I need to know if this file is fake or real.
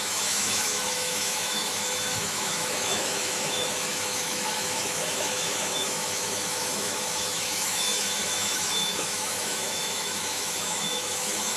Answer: fake